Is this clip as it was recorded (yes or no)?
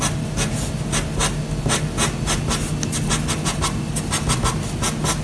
yes